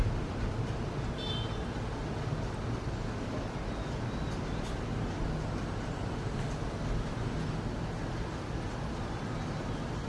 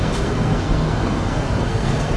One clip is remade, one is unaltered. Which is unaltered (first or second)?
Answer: first